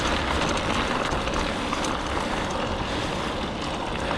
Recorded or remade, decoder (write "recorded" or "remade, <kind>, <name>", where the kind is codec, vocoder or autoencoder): recorded